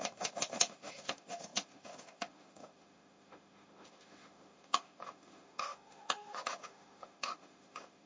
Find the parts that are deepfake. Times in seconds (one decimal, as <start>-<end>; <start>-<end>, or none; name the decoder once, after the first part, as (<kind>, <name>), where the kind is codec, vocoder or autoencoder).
0.0-8.1 (autoencoder, DAC-VAE)